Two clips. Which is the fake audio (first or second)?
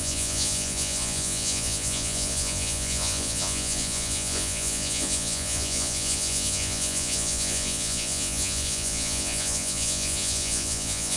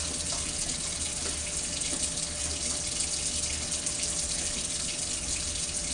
first